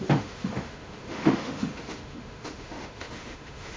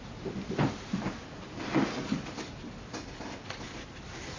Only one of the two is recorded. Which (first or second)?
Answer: second